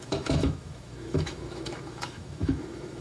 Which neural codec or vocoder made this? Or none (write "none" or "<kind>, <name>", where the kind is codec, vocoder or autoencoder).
autoencoder, DAC-VAE